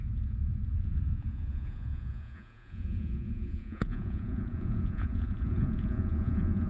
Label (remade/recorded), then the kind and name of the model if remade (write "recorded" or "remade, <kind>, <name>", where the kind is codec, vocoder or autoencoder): remade, vocoder, Vocos